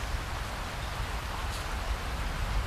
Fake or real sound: real